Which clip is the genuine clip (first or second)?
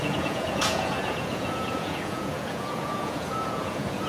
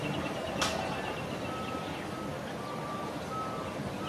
second